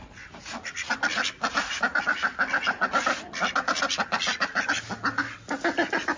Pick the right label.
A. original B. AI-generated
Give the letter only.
A